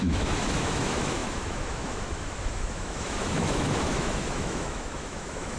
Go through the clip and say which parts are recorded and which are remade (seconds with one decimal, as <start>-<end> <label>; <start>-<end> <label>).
0.0-5.6 remade